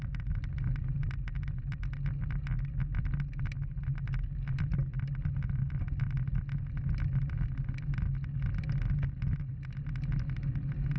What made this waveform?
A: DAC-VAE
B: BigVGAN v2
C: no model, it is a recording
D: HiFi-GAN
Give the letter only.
C